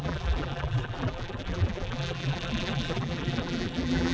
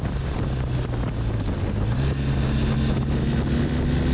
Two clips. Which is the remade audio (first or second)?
first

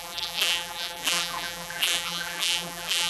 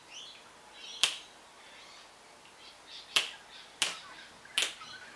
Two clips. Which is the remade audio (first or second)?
first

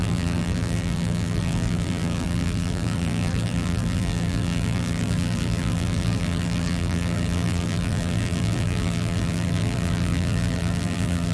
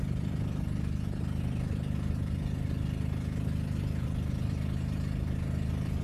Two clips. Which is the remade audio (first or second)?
first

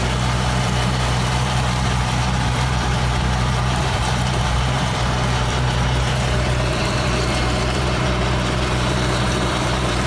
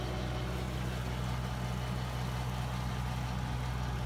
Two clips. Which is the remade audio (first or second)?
first